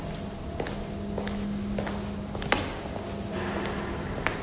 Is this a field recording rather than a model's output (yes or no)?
yes